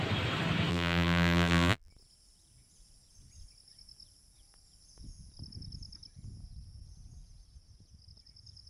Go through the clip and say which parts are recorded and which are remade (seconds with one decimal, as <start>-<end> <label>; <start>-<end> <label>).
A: 0.0-0.7 recorded; 0.7-1.9 remade; 1.9-8.7 recorded